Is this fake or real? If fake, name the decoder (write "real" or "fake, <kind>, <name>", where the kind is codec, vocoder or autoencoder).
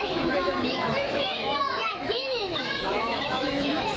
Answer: fake, autoencoder, DAC-VAE